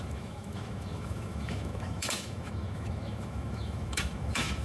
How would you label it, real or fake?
fake